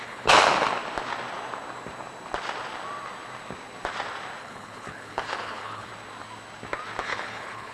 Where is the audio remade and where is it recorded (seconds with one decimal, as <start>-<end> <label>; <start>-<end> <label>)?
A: 0.0-0.4 remade; 0.4-4.4 recorded; 4.4-5.9 remade; 5.9-7.0 recorded; 7.0-7.7 remade